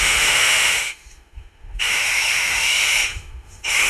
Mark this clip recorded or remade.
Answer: remade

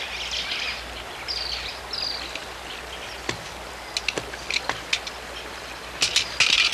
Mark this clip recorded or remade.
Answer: recorded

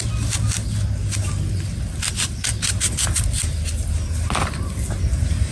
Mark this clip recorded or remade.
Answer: recorded